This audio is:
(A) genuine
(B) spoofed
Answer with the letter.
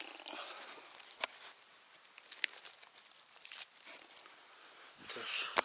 A